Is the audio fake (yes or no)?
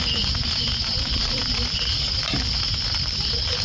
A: no